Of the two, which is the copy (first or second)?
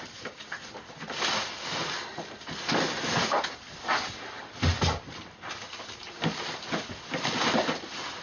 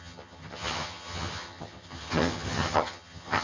second